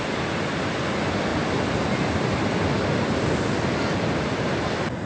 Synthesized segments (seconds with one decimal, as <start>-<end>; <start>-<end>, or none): none